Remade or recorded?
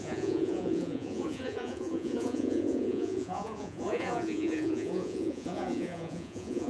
remade